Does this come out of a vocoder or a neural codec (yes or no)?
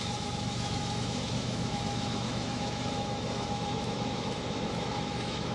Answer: yes